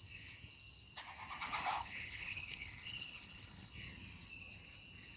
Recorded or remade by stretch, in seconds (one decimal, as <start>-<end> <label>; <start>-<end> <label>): 0.0-1.7 recorded; 1.7-3.7 remade; 3.7-5.2 recorded